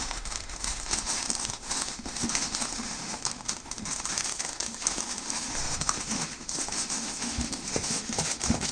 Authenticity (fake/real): fake